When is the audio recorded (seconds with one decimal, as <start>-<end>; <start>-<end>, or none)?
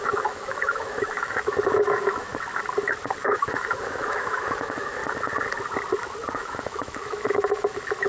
2.3-3.2; 5.0-6.3